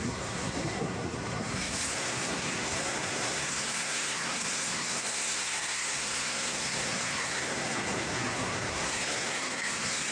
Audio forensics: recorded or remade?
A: remade